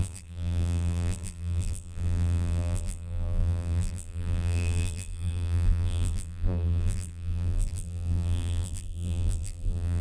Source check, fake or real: fake